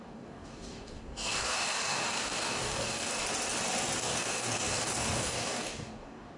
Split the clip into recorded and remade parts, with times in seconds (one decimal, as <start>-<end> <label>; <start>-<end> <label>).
0.0-3.1 remade; 3.1-4.0 recorded; 4.0-6.4 remade